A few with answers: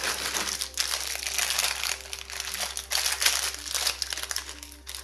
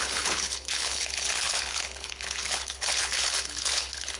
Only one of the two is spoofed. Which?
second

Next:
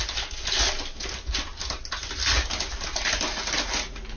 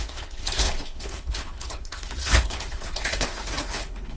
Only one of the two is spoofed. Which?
second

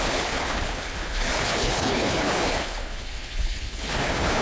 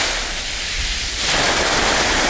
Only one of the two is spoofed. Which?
first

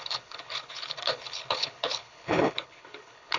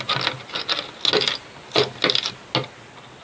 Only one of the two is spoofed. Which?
first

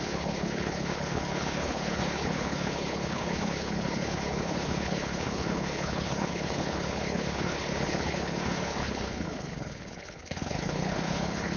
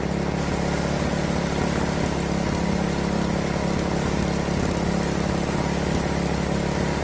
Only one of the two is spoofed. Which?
first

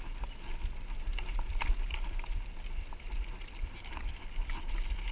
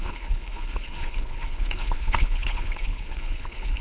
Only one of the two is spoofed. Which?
second